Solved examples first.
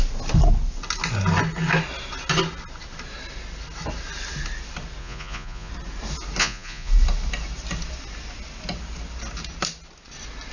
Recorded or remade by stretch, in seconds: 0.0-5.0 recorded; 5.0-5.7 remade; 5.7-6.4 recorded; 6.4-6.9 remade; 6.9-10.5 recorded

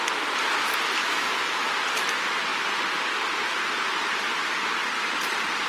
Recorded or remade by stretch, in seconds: 0.0-1.0 recorded; 1.0-1.7 remade; 1.7-5.7 recorded

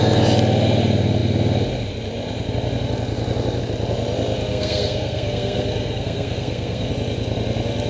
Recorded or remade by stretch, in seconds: 0.0-4.5 recorded; 4.5-6.9 remade; 6.9-7.9 recorded

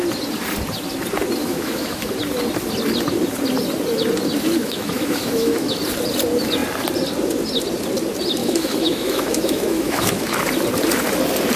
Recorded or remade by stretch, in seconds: 0.0-1.4 recorded; 1.4-2.1 remade; 2.1-4.6 recorded; 4.6-5.8 remade; 5.8-8.4 recorded; 8.4-10.4 remade; 10.4-11.6 recorded